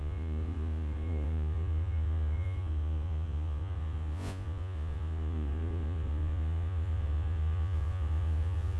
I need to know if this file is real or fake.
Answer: fake